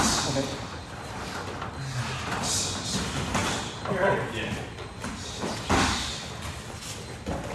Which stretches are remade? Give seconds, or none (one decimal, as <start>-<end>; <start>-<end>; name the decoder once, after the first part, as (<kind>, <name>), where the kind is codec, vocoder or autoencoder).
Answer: none